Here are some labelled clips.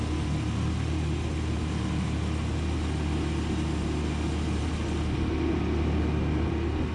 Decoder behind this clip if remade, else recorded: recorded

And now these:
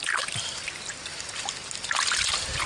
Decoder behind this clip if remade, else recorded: recorded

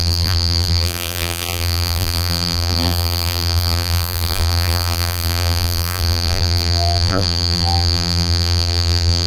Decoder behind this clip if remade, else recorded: remade, vocoder, BigVGAN v2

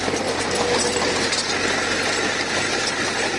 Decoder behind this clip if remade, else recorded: recorded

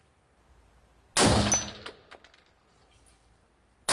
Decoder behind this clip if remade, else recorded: recorded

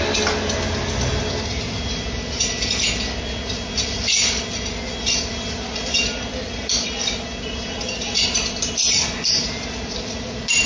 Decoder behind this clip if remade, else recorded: recorded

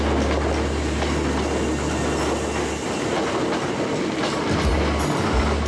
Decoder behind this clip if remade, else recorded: recorded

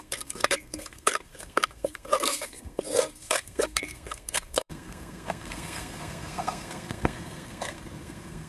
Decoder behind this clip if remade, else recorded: remade, codec, SNAC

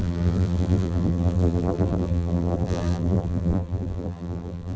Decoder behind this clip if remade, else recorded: remade, vocoder, BigVGAN v2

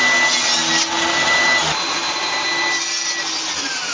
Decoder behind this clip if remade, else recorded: recorded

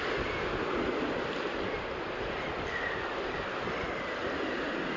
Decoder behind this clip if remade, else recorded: recorded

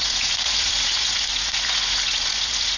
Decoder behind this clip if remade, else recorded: remade, vocoder, Vocos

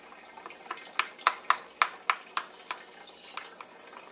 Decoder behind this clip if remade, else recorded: recorded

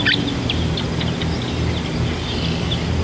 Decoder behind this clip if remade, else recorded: recorded